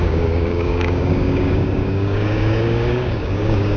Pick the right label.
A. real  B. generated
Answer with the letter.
B